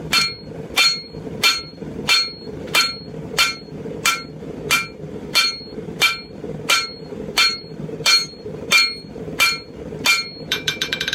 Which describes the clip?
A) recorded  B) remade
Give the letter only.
B